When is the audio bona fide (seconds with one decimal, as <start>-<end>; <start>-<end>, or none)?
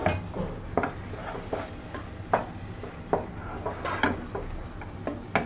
0.0-5.5